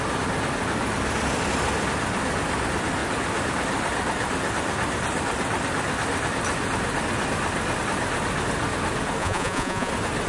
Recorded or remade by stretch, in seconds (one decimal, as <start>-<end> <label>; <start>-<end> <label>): 0.0-9.2 recorded; 9.2-9.9 remade; 9.9-10.3 recorded